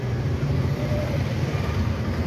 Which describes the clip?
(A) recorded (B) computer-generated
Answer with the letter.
B